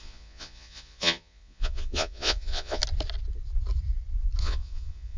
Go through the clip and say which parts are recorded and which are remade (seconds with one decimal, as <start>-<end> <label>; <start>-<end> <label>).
0.0-2.8 remade; 2.8-4.4 recorded; 4.4-5.2 remade

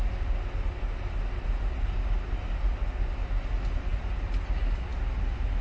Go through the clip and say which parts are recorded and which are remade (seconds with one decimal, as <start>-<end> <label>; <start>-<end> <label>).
0.0-5.6 recorded